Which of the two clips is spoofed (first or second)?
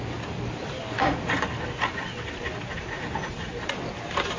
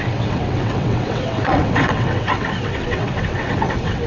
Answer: second